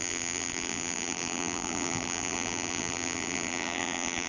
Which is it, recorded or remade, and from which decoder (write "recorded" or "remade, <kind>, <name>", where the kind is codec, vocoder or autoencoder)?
remade, vocoder, BigVGAN v2